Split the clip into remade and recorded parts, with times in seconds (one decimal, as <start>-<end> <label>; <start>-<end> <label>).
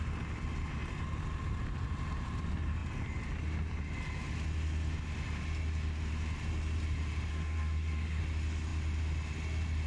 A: 0.0-7.3 recorded; 7.3-8.2 remade; 8.2-9.9 recorded